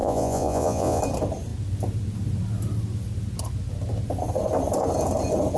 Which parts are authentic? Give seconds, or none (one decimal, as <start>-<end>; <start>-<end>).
1.0-5.6